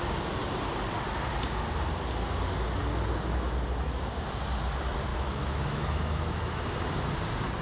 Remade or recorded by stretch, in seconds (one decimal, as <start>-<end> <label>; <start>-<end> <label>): 0.0-5.1 recorded; 5.1-6.6 remade; 6.6-7.6 recorded